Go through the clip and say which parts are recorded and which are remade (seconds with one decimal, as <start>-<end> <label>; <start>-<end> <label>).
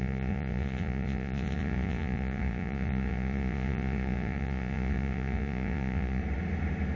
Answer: 0.0-6.2 remade; 6.2-7.0 recorded